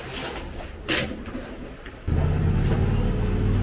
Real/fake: real